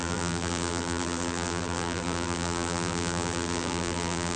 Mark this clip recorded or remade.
remade